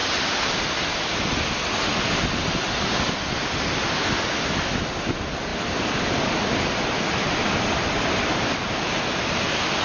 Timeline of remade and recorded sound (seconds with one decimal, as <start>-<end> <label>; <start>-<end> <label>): 0.0-9.8 recorded